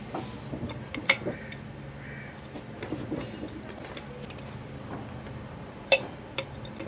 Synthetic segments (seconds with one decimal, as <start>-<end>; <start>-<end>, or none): none